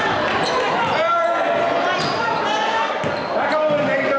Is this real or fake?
real